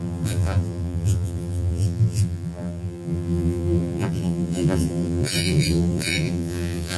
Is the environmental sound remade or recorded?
remade